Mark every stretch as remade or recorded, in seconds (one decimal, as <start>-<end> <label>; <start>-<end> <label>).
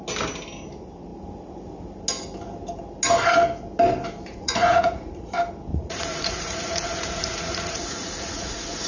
0.0-4.3 recorded; 4.3-5.3 remade; 5.3-5.7 recorded; 5.7-8.9 remade